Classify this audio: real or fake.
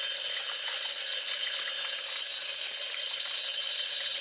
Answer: real